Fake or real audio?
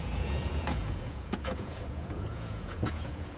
fake